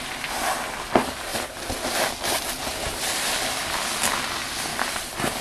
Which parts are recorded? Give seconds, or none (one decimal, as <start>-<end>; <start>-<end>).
0.0-1.3; 3.9-4.7